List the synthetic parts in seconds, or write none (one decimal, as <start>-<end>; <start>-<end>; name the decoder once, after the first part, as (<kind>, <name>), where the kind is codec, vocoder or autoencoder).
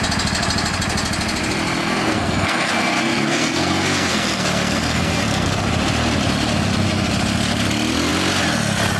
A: 1.8-5.6 (codec, SNAC)